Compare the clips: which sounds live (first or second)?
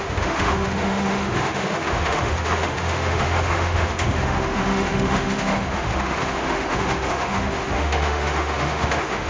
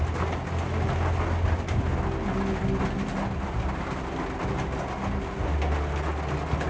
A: second